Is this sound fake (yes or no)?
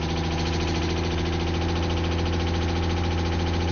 no